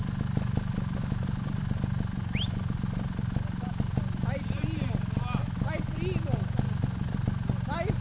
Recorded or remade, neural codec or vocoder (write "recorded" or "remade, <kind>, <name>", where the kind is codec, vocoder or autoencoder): recorded